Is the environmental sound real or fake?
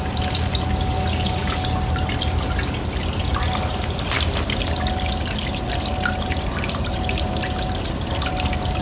real